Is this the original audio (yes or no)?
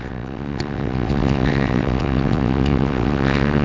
no